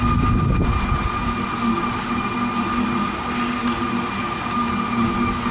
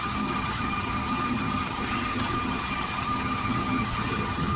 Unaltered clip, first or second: first